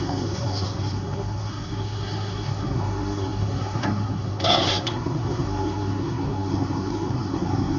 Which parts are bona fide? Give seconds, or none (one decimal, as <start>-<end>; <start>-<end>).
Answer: none